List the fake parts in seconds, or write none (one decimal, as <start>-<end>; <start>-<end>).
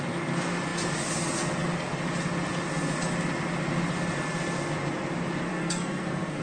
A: 5.5-6.4